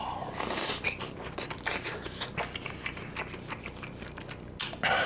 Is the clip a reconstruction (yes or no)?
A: no